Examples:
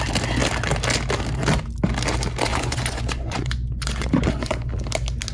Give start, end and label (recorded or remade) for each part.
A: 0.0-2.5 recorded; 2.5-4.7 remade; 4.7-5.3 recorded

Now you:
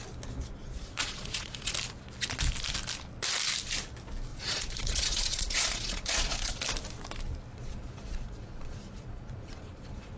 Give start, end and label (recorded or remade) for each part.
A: 0.0-0.6 recorded; 0.6-1.7 remade; 1.7-4.3 recorded; 4.3-6.6 remade; 6.6-7.5 recorded; 7.5-10.2 remade

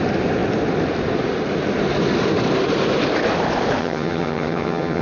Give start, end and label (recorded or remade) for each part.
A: 0.0-3.8 recorded; 3.8-5.0 remade

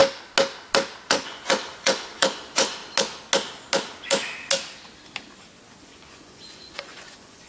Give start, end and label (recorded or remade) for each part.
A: 0.0-1.1 recorded; 1.1-2.8 remade; 2.8-5.8 recorded; 5.8-7.5 remade

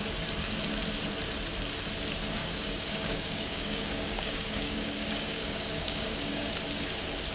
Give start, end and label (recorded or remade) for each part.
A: 0.0-2.4 recorded; 2.4-6.5 remade; 6.5-7.3 recorded

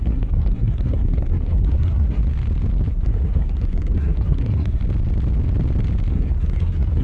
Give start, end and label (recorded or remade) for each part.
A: 0.0-2.2 remade; 2.2-2.9 recorded; 2.9-4.8 remade; 4.8-6.1 recorded; 6.1-7.0 remade

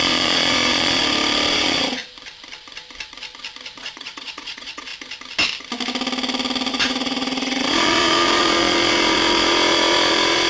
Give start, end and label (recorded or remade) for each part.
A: 0.0-1.0 remade; 1.0-1.5 recorded; 1.5-2.0 remade; 2.0-3.8 recorded; 3.8-4.9 remade; 4.9-6.7 recorded; 6.7-10.5 remade